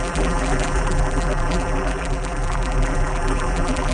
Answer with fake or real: fake